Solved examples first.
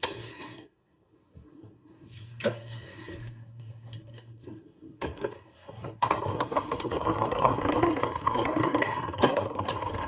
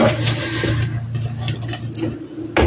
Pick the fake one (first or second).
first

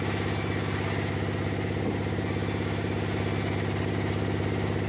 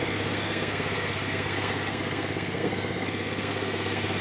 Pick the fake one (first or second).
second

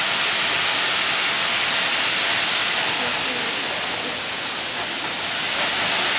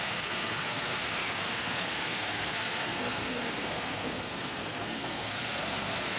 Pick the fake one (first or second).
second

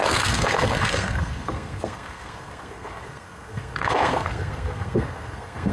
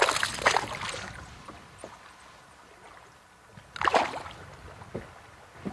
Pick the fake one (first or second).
first